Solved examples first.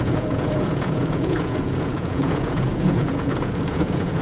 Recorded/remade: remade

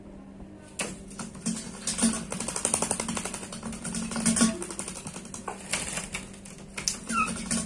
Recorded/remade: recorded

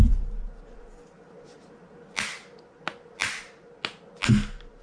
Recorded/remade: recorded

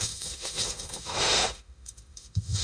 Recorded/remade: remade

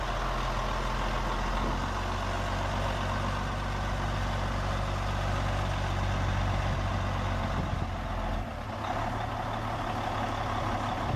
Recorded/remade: recorded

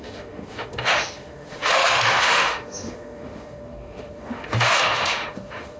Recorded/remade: remade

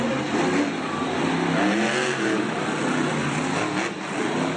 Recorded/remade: recorded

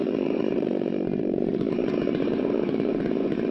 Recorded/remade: remade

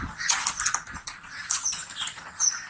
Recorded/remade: recorded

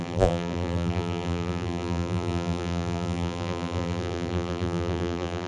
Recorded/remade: remade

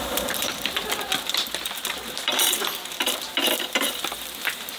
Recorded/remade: remade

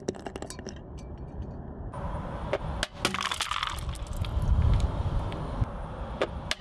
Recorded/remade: recorded